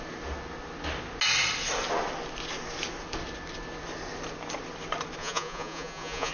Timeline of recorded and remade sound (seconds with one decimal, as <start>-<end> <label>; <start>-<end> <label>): 0.0-5.2 recorded; 5.2-6.3 remade